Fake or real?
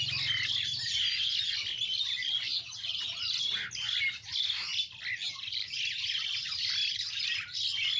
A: real